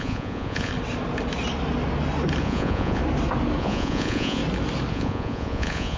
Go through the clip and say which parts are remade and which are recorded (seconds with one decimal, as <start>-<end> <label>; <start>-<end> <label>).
0.0-0.7 remade; 0.7-2.4 recorded; 2.4-3.0 remade; 3.0-3.6 recorded; 3.6-4.4 remade; 4.4-4.9 recorded; 4.9-6.0 remade

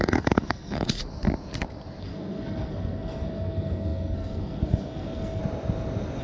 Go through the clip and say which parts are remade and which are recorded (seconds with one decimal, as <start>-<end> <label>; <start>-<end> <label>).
0.0-1.0 remade; 1.0-2.0 recorded; 2.0-5.4 remade; 5.4-6.2 recorded